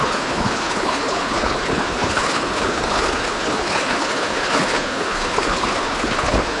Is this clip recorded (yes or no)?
no